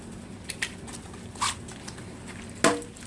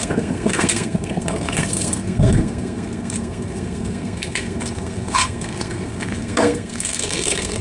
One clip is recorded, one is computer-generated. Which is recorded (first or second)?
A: first